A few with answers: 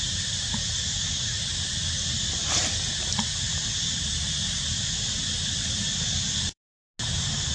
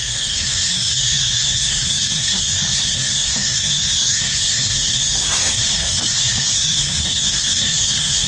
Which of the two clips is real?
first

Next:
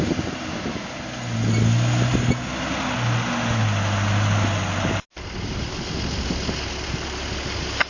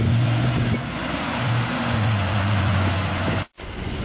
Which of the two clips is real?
first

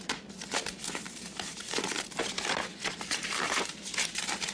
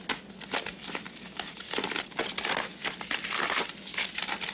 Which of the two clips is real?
second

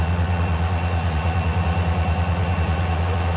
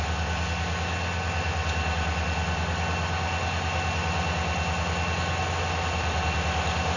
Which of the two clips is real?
second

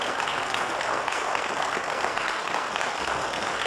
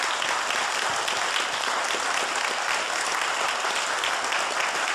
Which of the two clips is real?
second